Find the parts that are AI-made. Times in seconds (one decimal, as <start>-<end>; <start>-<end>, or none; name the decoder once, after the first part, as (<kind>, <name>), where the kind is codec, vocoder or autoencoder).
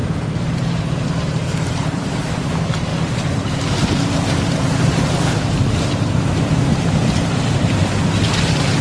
0.0-2.5 (vocoder, BigVGAN v2); 2.9-7.9